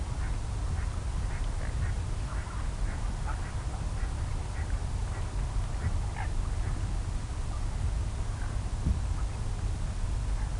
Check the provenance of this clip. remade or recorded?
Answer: recorded